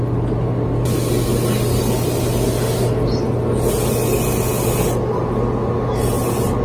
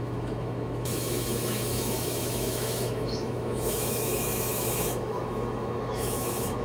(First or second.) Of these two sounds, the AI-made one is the second